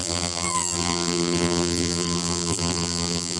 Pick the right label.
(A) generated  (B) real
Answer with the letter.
A